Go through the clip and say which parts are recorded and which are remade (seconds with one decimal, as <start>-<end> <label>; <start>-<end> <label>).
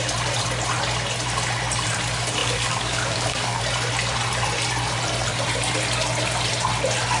0.0-2.4 recorded; 2.4-3.6 remade; 3.6-7.2 recorded